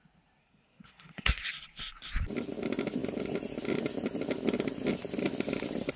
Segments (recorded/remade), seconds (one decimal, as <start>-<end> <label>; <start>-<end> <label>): 0.0-0.4 recorded; 0.4-1.4 remade; 1.4-6.0 recorded